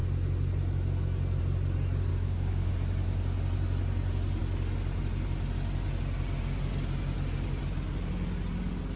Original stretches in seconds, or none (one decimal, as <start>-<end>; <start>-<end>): 0.0-2.1; 2.7-9.0